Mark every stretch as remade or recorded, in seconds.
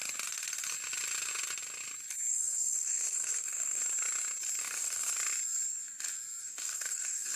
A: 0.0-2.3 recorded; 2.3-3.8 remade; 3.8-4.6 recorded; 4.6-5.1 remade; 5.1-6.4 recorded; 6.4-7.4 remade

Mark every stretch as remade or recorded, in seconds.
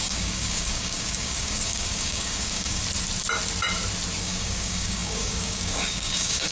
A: 0.0-2.8 remade; 2.8-4.2 recorded; 4.2-6.5 remade